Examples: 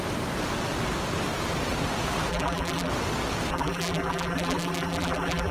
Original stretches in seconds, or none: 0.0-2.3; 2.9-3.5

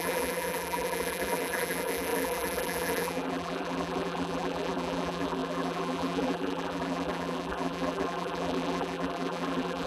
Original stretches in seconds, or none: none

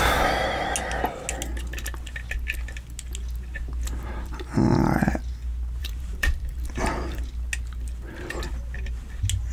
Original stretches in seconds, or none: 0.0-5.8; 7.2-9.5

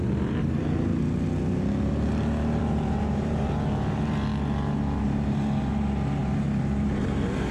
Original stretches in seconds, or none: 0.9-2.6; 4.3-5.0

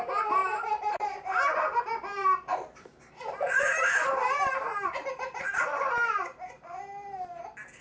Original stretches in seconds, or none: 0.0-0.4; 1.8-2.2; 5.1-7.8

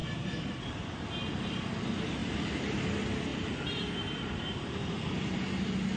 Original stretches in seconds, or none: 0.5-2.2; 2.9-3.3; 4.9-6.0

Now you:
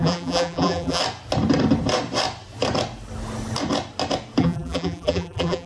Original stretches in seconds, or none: 1.0-4.4